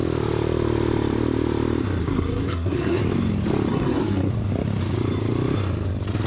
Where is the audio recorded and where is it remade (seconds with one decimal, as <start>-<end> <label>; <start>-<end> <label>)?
0.0-2.0 recorded; 2.0-3.0 remade; 3.0-3.7 recorded; 3.7-4.3 remade; 4.3-6.3 recorded